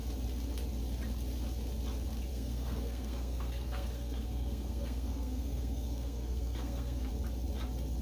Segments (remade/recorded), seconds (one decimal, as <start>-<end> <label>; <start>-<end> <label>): 0.0-2.3 recorded; 2.3-7.1 remade; 7.1-8.0 recorded